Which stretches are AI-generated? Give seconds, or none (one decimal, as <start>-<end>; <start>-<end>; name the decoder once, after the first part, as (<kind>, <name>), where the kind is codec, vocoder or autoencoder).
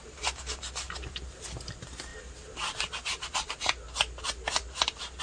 none